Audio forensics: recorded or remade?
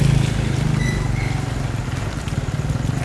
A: recorded